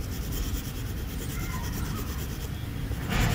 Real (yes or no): yes